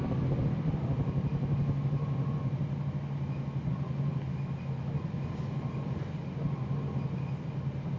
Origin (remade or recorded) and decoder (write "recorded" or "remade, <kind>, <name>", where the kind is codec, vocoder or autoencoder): recorded